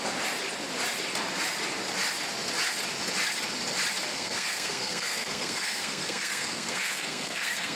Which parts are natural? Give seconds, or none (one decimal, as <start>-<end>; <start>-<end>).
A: 0.0-4.1